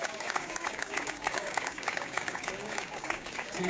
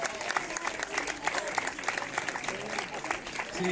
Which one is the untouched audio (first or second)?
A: second